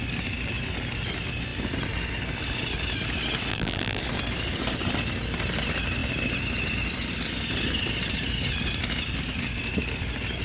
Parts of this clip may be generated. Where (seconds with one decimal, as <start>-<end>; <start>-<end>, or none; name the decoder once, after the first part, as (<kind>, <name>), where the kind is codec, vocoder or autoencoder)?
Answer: 3.5-4.0 (vocoder, BigVGAN v2)